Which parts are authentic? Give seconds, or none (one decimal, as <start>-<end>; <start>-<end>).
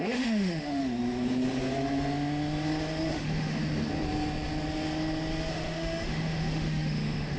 0.8-3.1; 3.6-5.5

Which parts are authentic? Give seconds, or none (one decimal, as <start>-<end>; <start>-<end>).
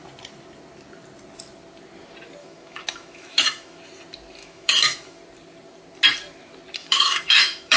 0.0-2.4; 3.8-4.4; 5.2-6.8